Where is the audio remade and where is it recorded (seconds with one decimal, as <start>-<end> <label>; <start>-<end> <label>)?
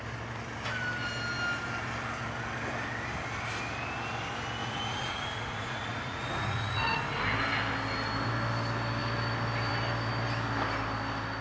0.0-4.6 recorded; 4.6-7.0 remade; 7.0-11.4 recorded